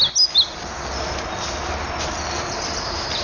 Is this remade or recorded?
recorded